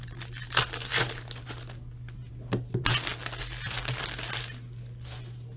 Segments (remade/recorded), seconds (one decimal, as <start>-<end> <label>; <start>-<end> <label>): 0.0-5.6 recorded